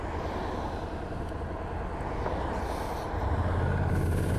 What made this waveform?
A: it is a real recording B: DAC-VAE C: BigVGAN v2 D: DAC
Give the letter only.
A